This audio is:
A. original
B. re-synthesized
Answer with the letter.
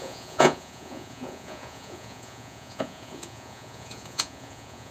B